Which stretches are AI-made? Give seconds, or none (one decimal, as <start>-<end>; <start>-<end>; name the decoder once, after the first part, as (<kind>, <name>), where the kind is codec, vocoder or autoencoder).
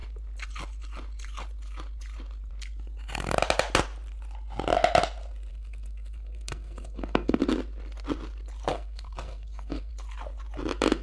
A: 5.5-7.4 (codec, SNAC); 8.7-9.9